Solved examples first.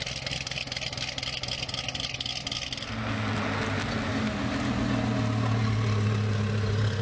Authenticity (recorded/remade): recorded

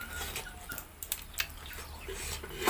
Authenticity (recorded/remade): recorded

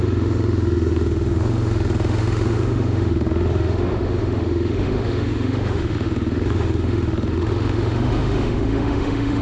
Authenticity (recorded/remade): remade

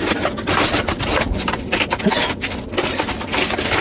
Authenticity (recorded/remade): recorded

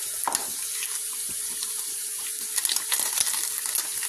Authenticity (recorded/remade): recorded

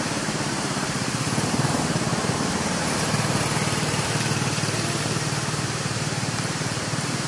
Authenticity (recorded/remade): remade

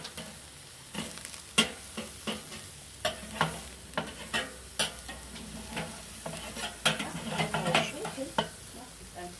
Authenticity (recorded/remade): recorded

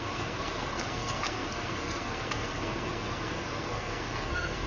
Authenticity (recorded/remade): remade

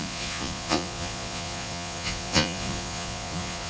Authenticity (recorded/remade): remade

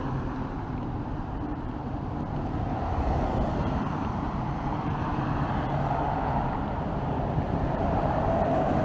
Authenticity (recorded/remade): remade